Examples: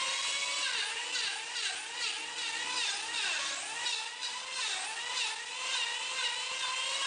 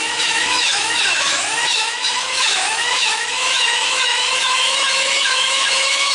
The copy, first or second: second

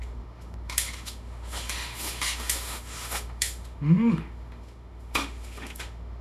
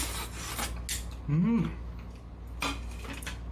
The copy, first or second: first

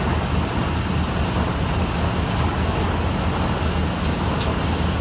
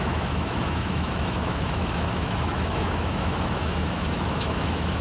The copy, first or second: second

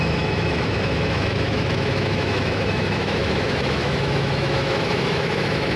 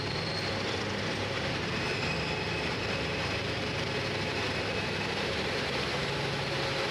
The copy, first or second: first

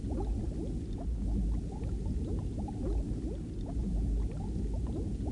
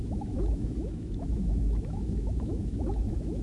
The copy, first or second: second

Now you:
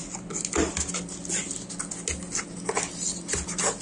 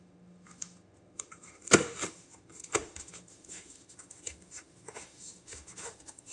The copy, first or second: second